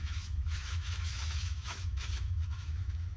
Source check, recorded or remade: remade